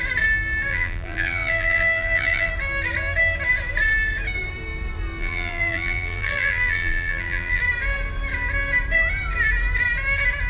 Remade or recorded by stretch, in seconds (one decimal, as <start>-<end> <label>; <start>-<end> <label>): 0.0-0.7 recorded; 0.7-2.5 remade; 2.5-5.2 recorded; 5.2-7.6 remade; 7.6-10.5 recorded